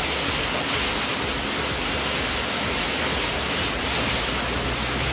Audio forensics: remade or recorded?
recorded